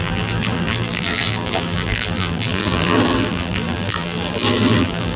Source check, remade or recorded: remade